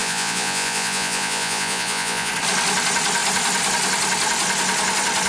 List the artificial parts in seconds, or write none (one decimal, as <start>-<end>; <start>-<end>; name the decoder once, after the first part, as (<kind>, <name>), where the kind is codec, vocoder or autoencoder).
0.0-2.3 (vocoder, Vocos)